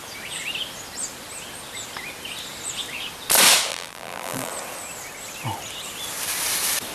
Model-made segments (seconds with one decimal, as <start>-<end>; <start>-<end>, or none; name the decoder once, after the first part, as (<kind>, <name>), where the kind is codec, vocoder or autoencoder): 3.7-4.5 (vocoder, BigVGAN v2)